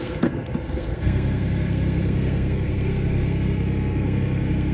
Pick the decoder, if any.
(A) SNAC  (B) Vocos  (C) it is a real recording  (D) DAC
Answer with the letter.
A